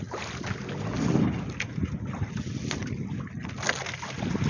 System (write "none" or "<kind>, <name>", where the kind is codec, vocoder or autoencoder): none